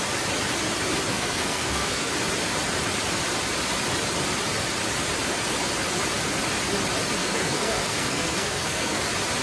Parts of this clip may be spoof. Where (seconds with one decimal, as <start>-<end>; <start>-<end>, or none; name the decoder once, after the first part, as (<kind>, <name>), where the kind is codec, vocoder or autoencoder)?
1.1-2.1 (codec, SNAC); 7.2-9.0